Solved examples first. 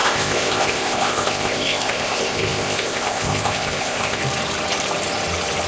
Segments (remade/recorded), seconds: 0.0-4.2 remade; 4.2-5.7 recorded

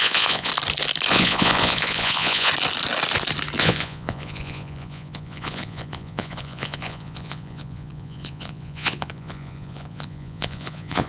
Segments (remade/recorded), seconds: 0.0-0.5 remade; 0.5-1.1 recorded; 1.1-2.5 remade; 2.5-3.6 recorded; 3.6-11.1 remade